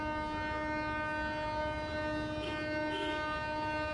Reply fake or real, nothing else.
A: real